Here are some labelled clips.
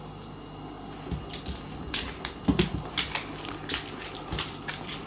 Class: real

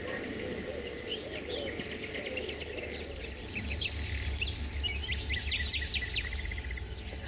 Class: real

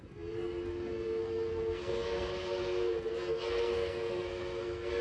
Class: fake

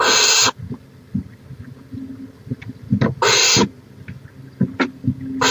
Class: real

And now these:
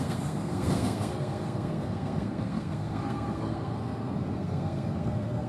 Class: fake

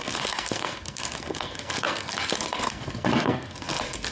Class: fake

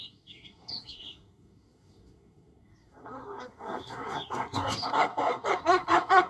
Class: fake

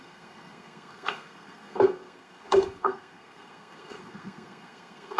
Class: fake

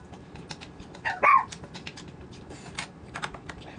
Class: real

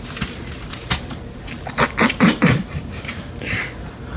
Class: real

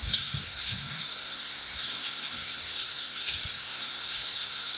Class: fake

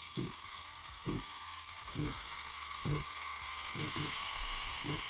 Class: fake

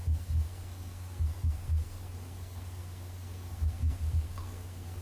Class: fake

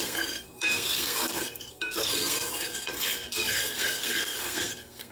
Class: fake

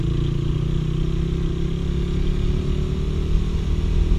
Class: real